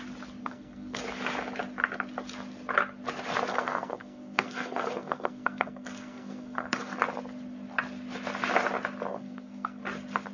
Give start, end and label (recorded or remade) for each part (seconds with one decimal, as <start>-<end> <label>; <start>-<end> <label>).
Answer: 0.0-0.4 recorded; 0.4-1.0 remade; 1.0-3.5 recorded; 3.5-7.0 remade; 7.0-9.1 recorded; 9.1-9.8 remade; 9.8-10.3 recorded